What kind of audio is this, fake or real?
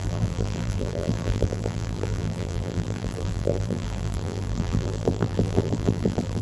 fake